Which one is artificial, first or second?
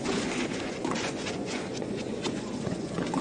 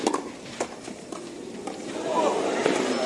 first